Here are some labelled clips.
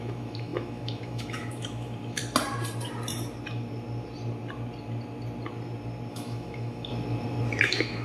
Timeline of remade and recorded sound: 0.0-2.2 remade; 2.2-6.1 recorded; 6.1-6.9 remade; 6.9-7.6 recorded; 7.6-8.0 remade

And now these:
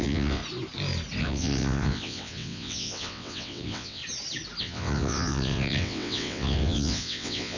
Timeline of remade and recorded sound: 0.0-0.4 remade; 0.4-1.2 recorded; 1.2-4.0 remade; 4.0-4.6 recorded; 4.6-7.6 remade

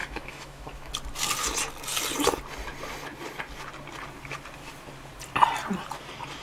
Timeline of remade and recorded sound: 0.0-0.9 remade; 0.9-6.4 recorded